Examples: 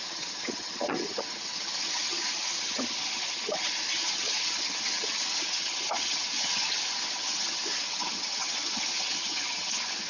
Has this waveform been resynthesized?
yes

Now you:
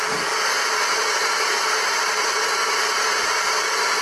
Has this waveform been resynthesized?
no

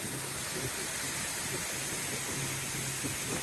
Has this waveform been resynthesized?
no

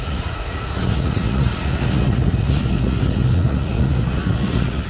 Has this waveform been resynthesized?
yes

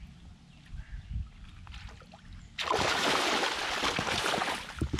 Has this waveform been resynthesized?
no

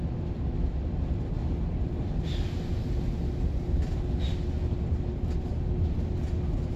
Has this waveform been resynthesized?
no